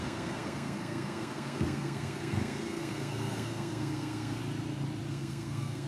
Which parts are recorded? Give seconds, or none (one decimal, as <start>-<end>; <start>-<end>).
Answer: 4.4-5.1